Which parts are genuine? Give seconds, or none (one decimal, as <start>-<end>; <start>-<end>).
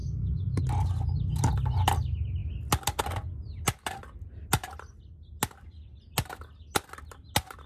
0.6-7.7